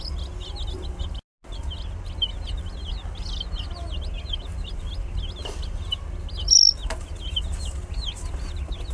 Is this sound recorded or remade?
recorded